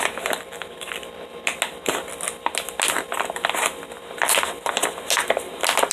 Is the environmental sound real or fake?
real